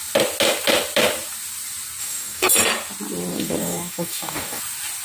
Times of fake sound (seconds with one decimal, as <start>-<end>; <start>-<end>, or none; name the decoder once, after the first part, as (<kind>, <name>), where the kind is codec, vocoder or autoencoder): 2.0-2.5 (codec, DAC); 3.3-4.6